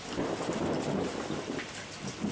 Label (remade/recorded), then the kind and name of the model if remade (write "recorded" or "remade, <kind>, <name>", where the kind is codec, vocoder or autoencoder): recorded